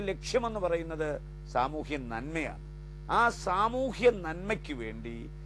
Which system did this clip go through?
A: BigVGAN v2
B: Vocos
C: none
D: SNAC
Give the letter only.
C